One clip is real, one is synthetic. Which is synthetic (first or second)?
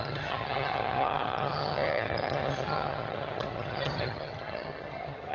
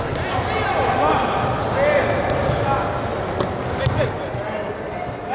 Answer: first